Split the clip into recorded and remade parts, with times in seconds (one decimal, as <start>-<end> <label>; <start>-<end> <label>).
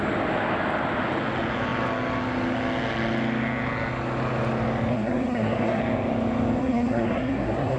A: 0.0-4.9 recorded; 4.9-5.8 remade; 5.8-6.6 recorded; 6.6-7.8 remade